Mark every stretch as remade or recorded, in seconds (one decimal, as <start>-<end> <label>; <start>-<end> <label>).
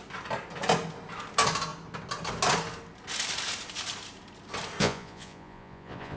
0.0-4.8 recorded; 4.8-6.2 remade